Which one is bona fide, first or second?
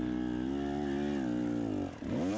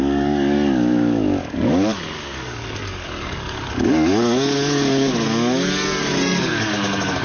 first